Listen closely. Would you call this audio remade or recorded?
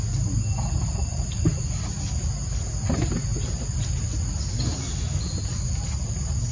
recorded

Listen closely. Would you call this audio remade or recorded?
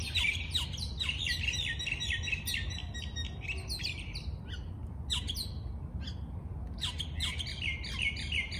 recorded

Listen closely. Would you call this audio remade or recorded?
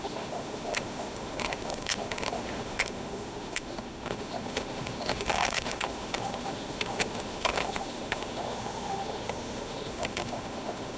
remade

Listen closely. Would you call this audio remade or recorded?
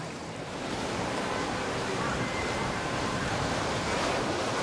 remade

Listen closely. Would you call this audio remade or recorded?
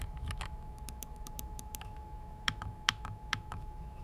remade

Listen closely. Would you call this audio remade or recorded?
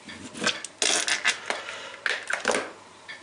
recorded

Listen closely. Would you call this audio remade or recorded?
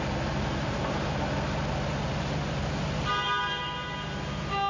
recorded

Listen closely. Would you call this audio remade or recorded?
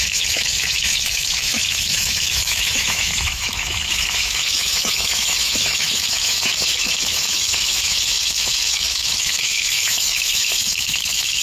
remade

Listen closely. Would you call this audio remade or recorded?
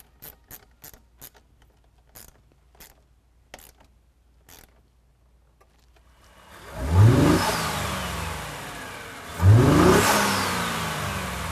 recorded